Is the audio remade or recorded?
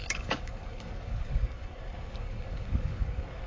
remade